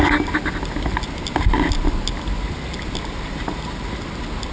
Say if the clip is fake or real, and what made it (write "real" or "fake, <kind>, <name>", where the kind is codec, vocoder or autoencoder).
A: real